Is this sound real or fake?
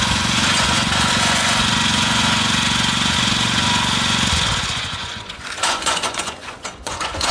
fake